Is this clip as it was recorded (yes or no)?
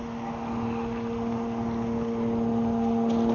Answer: yes